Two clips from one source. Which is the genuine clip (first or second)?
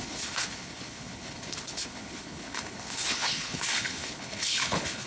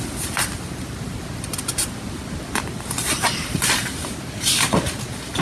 second